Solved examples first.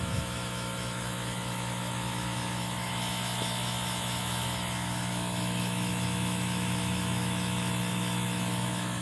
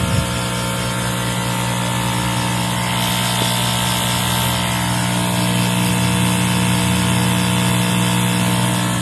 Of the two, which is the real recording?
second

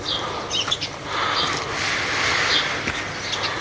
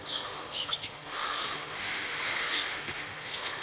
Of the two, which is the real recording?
first